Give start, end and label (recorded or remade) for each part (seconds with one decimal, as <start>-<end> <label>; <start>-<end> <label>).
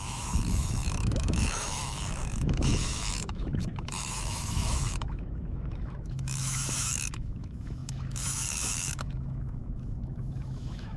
0.0-11.0 remade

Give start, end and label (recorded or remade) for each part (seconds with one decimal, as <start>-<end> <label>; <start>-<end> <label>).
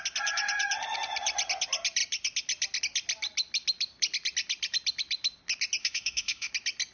0.0-5.8 recorded; 5.8-6.5 remade; 6.5-6.9 recorded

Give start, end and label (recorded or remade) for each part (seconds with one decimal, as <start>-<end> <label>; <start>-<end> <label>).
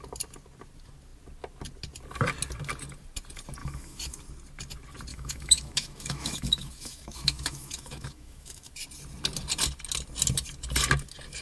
0.0-3.6 recorded; 3.6-4.2 remade; 4.2-5.1 recorded; 5.1-8.7 remade; 8.7-11.4 recorded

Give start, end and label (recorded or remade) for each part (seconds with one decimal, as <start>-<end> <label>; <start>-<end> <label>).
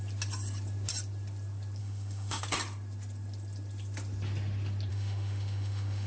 0.0-1.8 recorded; 1.8-2.4 remade; 2.4-4.9 recorded; 4.9-6.1 remade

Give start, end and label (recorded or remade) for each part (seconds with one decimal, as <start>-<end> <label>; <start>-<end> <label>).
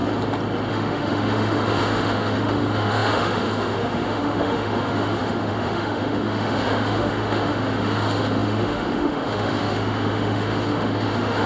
0.0-0.7 recorded; 0.7-11.5 remade